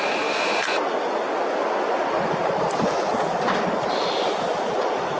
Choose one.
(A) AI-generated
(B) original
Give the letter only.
B